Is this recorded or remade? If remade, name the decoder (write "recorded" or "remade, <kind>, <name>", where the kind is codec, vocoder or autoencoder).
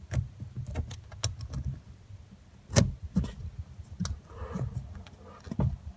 recorded